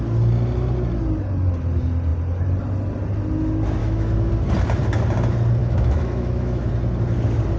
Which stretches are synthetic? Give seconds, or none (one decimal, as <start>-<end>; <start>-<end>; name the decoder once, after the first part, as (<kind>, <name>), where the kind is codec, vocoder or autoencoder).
3.8-4.3 (autoencoder, DAC-VAE); 5.6-6.7